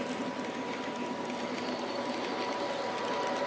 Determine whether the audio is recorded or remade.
recorded